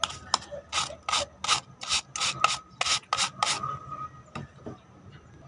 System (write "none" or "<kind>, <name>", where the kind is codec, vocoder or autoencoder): none